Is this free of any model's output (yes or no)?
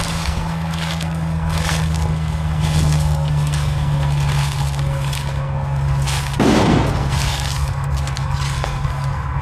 no